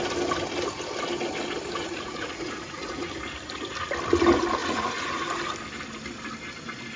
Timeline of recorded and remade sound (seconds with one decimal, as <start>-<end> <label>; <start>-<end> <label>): 0.0-1.8 recorded; 1.8-3.1 remade; 3.1-4.6 recorded; 4.6-5.4 remade; 5.4-7.0 recorded